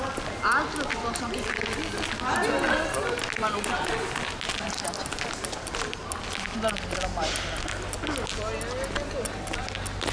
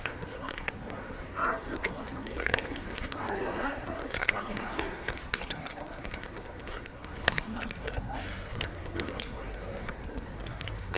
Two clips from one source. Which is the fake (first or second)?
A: second